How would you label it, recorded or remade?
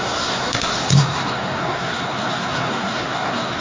remade